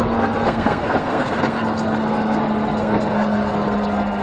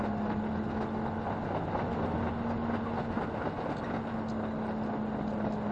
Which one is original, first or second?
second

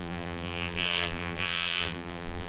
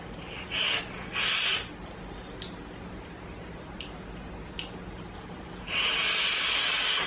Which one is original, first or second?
second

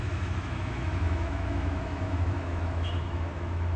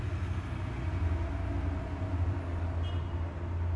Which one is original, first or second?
second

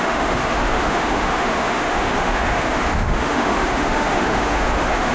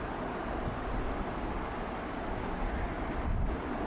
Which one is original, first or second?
second